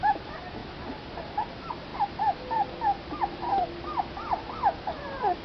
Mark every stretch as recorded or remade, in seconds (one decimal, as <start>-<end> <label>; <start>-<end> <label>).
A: 0.0-5.4 recorded